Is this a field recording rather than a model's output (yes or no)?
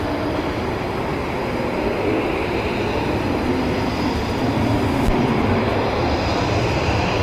yes